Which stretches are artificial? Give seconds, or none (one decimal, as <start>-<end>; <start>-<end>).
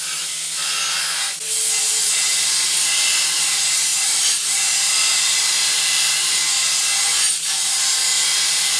3.9-6.1